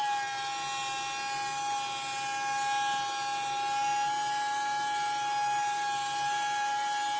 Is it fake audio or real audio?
real